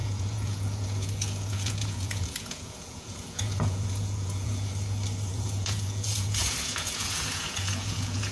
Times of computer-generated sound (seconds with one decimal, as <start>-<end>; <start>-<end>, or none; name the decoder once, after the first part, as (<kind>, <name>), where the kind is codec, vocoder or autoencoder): 0.0-4.7 (vocoder, Vocos); 5.3-8.3